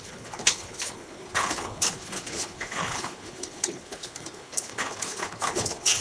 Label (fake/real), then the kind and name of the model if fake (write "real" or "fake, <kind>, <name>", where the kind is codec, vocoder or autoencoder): fake, codec, HILCodec